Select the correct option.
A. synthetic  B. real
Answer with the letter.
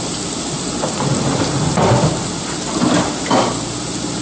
B